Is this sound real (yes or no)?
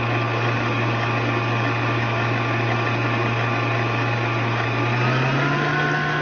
yes